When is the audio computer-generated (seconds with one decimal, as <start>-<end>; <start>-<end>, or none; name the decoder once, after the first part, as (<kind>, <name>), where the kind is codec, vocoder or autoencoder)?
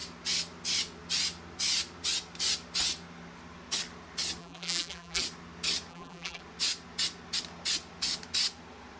4.4-5.2 (vocoder, BigVGAN v2); 5.9-6.4